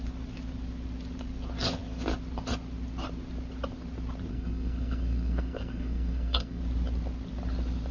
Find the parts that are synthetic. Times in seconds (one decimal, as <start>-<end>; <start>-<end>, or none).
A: 4.3-6.6